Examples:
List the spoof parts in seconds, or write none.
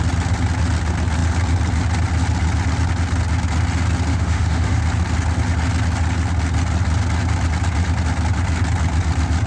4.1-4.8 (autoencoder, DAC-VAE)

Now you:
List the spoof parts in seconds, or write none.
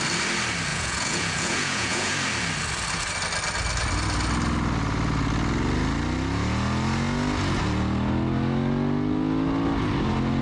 0.7-2.1 (vocoder, Vocos)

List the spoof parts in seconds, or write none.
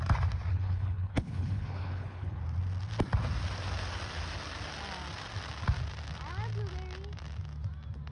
0.5-2.4 (codec, HILCodec)